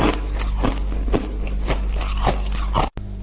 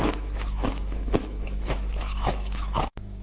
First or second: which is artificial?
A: second